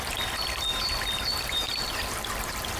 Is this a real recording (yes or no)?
no